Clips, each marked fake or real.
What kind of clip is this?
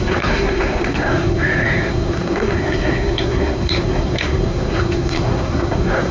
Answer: fake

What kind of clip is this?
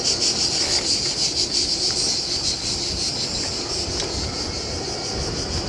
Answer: real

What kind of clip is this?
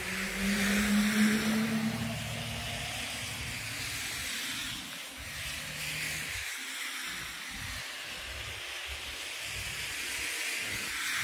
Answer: real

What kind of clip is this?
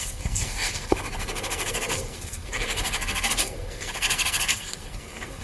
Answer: fake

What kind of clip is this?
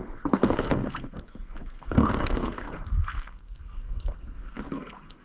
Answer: fake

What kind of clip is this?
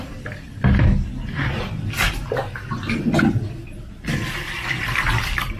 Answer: real